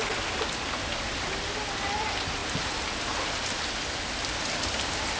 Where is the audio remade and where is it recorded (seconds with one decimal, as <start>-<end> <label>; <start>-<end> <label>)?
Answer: 0.0-5.2 recorded